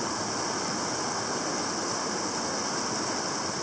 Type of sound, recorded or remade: recorded